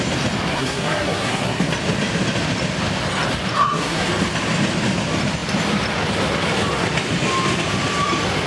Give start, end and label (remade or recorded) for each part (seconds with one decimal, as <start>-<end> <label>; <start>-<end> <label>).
0.0-0.5 recorded; 0.5-1.7 remade; 1.7-3.5 recorded; 3.5-4.1 remade; 4.1-8.5 recorded